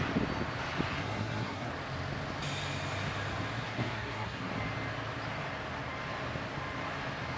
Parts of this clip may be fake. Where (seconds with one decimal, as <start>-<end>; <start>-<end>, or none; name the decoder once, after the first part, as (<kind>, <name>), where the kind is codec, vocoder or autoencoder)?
0.9-1.7 (codec, SNAC); 3.7-4.5